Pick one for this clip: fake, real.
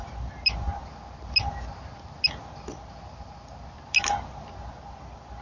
real